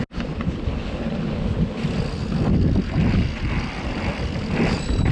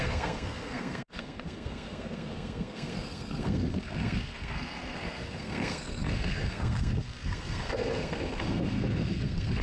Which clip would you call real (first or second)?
first